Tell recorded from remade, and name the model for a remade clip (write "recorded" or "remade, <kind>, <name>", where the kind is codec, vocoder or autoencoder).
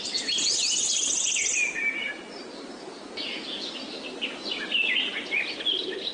recorded